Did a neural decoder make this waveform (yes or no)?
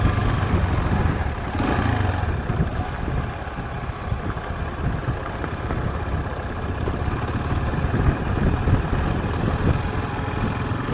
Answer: no